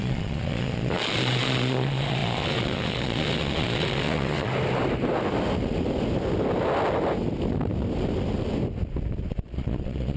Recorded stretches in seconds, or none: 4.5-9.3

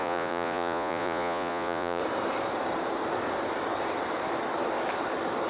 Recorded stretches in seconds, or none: 2.0-5.5

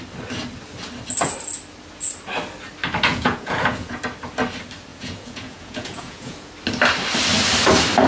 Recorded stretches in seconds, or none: 0.0-3.1; 4.0-4.9; 6.5-8.1

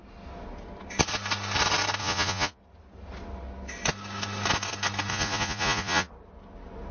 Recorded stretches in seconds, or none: 0.0-2.0; 2.6-5.1; 6.1-6.9

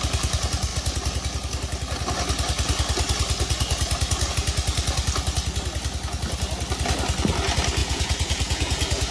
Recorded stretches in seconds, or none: 0.0-7.8

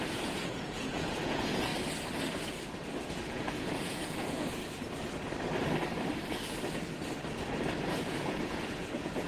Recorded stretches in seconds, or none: 1.7-3.1; 4.6-7.9

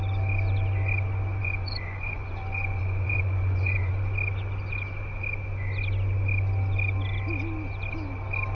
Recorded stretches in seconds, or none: 0.0-1.4; 3.9-8.5